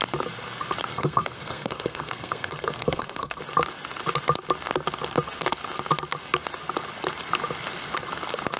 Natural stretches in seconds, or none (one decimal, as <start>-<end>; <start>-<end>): 0.0-0.9; 3.4-8.6